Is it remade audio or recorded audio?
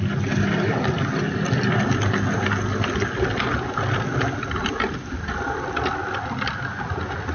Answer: recorded